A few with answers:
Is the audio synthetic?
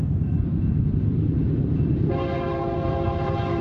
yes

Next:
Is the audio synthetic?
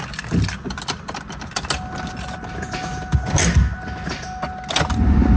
no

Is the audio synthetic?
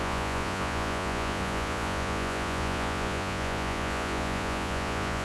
yes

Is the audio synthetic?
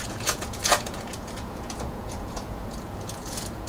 yes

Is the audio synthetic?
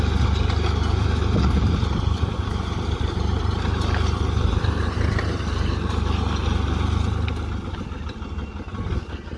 no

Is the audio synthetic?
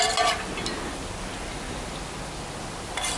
no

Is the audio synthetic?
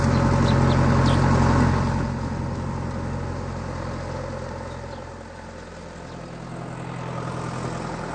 no